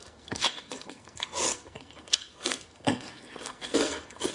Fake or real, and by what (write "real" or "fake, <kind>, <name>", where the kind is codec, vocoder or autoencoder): fake, codec, SNAC